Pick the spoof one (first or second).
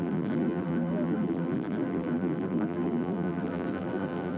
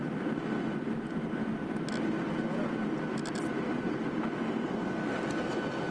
first